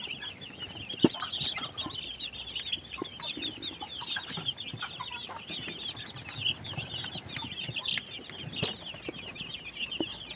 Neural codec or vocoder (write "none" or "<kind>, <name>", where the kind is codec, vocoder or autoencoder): none